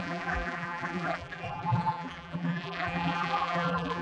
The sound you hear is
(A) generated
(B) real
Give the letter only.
A